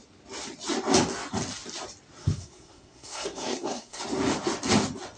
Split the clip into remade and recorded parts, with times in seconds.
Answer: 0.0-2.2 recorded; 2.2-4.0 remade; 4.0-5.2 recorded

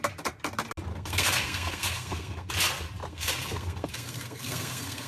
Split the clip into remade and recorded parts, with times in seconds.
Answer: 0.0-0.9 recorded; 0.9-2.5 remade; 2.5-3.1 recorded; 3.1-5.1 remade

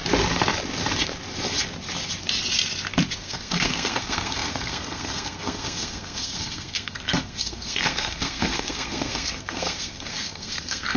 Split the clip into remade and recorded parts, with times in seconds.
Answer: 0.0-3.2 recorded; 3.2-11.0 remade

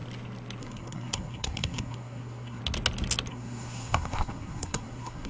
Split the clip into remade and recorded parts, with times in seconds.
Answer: 0.0-0.6 recorded; 0.6-2.6 remade; 2.6-3.3 recorded; 3.3-5.3 remade

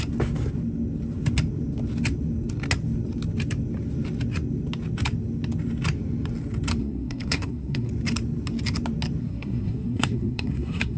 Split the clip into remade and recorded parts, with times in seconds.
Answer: 0.0-6.8 recorded; 6.8-7.9 remade; 7.9-9.2 recorded; 9.2-11.0 remade